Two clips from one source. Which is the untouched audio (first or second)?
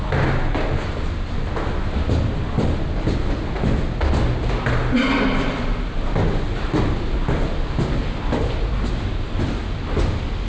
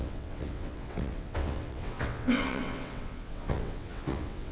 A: first